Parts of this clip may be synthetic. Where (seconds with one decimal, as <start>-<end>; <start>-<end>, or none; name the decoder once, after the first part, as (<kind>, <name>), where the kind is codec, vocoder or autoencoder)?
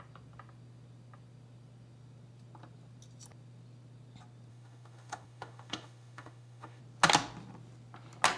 4.5-6.8 (autoencoder, DAC-VAE)